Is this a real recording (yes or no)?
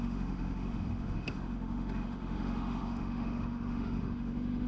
no